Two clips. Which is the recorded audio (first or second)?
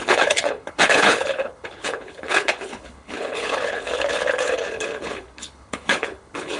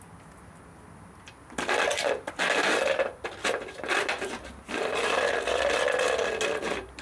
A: second